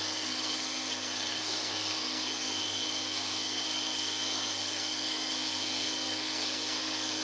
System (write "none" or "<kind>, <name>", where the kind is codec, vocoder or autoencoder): codec, SNAC